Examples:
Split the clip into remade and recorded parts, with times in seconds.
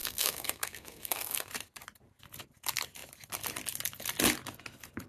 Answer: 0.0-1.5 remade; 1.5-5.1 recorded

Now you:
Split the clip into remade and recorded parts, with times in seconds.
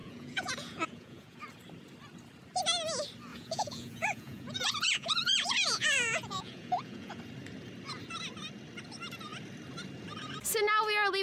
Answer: 0.0-1.4 remade; 1.4-3.3 recorded; 3.3-7.2 remade; 7.2-11.2 recorded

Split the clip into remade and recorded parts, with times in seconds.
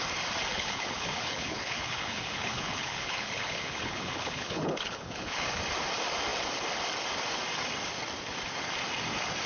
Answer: 0.0-0.5 recorded; 0.5-5.5 remade; 5.5-9.5 recorded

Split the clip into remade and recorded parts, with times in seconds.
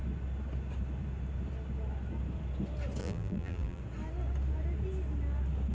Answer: 0.0-3.0 recorded; 3.0-3.8 remade; 3.8-5.7 recorded